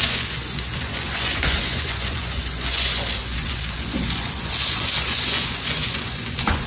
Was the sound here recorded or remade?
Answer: remade